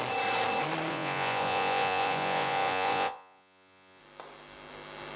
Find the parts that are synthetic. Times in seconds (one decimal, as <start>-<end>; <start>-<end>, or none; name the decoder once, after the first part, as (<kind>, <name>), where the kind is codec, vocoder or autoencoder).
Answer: 0.9-4.0 (vocoder, Vocos)